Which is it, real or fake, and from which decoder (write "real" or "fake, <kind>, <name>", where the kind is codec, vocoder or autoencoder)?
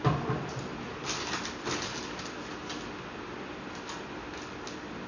real